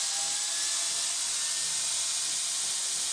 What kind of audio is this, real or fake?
real